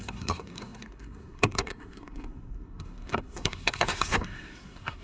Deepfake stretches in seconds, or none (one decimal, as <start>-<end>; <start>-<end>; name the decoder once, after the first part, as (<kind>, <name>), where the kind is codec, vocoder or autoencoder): 0.0-5.0 (codec, SNAC)

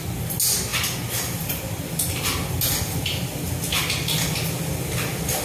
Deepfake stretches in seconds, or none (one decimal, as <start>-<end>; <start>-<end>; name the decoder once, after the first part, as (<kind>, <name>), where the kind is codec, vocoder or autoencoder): none

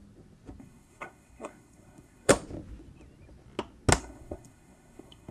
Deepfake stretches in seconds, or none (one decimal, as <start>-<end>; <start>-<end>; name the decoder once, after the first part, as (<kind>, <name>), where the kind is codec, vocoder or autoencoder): 0.6-2.3 (codec, SNAC); 4.0-5.3

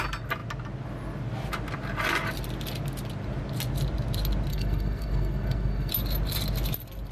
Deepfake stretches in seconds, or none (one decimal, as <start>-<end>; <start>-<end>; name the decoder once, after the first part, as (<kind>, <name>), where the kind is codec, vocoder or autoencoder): 4.5-5.9 (codec, SNAC)